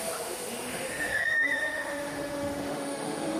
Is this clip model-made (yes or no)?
yes